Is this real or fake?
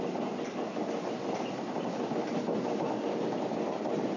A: real